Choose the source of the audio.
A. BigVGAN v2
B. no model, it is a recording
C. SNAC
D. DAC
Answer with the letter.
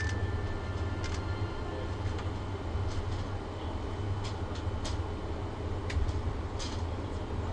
B